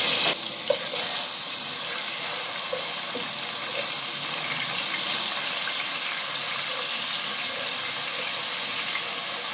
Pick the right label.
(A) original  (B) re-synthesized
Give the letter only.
A